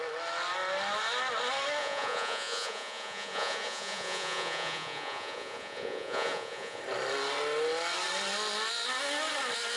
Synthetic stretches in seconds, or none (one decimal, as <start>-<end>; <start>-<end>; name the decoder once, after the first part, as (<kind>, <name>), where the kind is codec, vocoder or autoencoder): 1.8-6.8 (vocoder, Vocos)